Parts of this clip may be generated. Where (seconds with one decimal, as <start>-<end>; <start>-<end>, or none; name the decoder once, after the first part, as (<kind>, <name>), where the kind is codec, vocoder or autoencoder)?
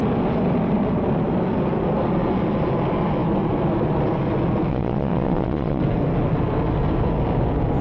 4.7-5.8 (vocoder, Vocos)